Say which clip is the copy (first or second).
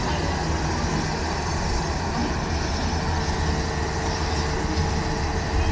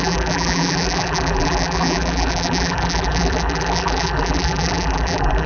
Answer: second